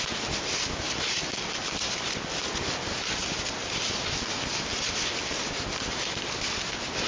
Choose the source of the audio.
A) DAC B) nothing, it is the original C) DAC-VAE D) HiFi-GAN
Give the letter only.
B